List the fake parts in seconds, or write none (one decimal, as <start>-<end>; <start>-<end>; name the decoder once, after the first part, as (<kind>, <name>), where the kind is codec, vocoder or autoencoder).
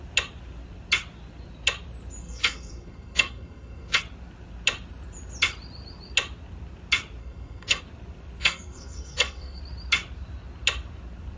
2.2-4.0 (codec, SNAC); 7.2-7.8; 8.4-9.6